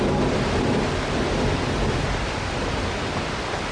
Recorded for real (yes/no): yes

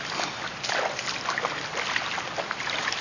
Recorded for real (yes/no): yes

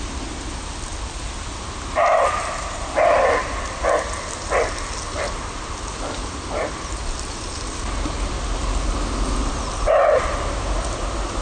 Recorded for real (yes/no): yes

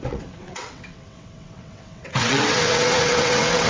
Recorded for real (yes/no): no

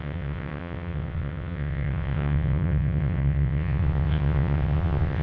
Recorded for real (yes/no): no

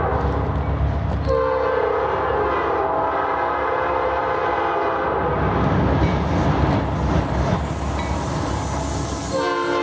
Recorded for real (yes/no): yes